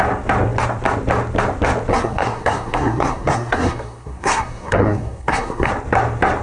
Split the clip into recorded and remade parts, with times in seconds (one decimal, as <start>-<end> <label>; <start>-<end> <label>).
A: 0.0-1.9 recorded; 1.9-5.7 remade; 5.7-6.4 recorded